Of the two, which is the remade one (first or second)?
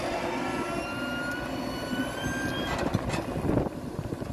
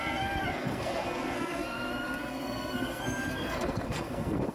second